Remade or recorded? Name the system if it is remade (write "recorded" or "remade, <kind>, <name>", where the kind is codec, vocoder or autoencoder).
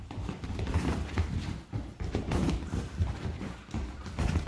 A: remade, vocoder, BigVGAN v2